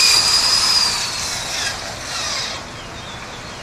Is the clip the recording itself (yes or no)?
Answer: no